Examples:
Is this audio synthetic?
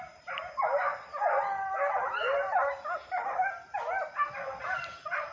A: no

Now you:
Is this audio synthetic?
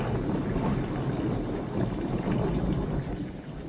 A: no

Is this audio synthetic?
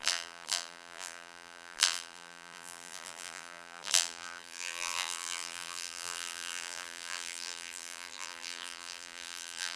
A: yes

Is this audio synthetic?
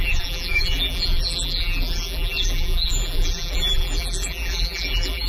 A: yes